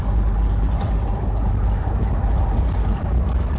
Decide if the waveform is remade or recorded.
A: recorded